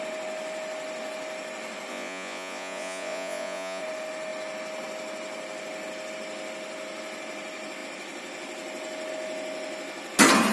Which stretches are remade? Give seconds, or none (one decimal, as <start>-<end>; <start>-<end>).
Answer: 1.9-3.8

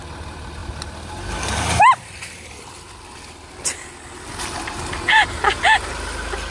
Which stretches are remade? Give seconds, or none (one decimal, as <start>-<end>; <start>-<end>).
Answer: 0.0-0.6; 1.9-6.5

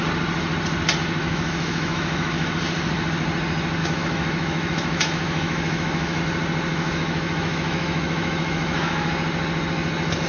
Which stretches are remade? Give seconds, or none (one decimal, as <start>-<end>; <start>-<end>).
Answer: 1.2-2.5; 3.8-6.2; 6.7-9.1

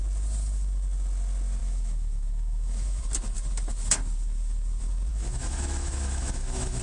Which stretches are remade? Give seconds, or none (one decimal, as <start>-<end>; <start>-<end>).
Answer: 1.6-3.0; 5.1-6.8

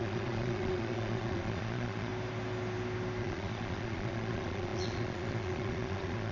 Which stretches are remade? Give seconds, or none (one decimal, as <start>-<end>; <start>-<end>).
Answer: 0.0-2.1; 3.2-6.3

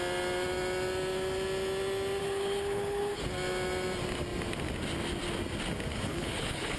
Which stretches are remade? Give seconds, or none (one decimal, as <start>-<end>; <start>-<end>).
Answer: 2.2-3.2; 5.9-6.8

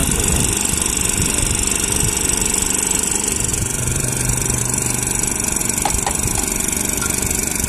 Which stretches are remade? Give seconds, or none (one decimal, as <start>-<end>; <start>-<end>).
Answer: 0.0-0.9; 3.5-4.6; 5.6-6.3

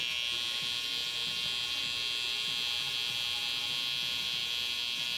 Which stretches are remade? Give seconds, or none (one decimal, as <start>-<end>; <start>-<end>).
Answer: none